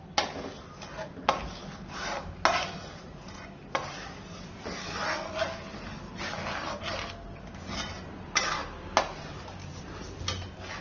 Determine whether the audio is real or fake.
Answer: real